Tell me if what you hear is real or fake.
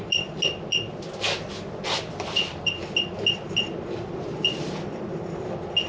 real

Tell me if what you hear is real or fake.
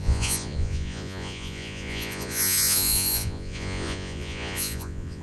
fake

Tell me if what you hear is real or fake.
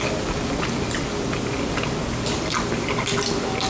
real